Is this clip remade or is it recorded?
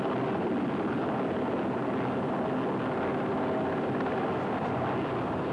recorded